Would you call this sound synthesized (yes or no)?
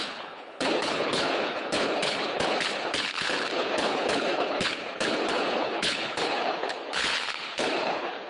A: yes